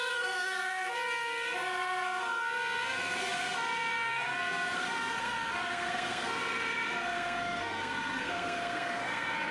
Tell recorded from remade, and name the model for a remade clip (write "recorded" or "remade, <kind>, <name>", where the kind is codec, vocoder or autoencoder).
remade, codec, SNAC